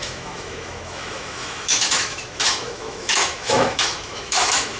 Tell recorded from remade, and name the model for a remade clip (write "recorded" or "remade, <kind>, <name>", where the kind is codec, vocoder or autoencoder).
remade, autoencoder, DAC-VAE